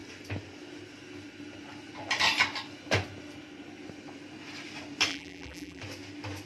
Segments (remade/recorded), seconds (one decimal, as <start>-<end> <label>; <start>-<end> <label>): 0.0-5.1 recorded; 5.1-5.8 remade; 5.8-6.5 recorded